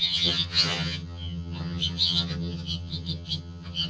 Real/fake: fake